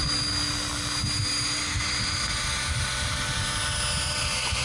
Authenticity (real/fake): real